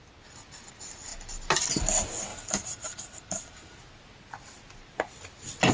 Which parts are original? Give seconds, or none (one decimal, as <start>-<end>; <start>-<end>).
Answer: 0.0-2.3; 3.8-5.7